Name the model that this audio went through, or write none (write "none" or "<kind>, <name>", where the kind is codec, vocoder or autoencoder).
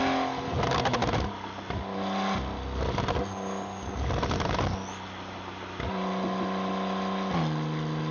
none